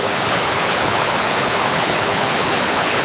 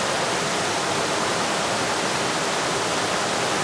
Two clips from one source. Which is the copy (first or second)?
first